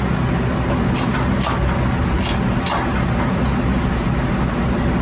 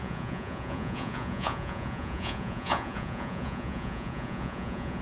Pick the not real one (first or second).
second